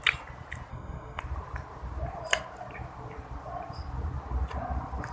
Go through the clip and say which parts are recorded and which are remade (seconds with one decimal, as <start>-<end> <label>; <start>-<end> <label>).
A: 0.0-0.7 recorded; 0.7-1.2 remade; 1.2-5.1 recorded